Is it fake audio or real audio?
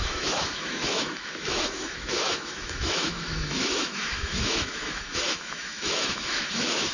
fake